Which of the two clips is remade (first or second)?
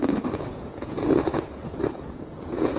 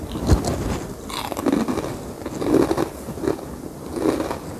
first